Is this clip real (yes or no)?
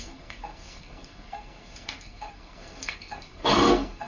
no